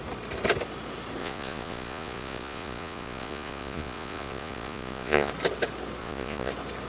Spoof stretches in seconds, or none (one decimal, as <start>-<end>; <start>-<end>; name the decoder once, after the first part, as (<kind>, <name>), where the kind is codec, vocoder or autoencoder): 1.2-5.3 (vocoder, Vocos); 6.0-6.5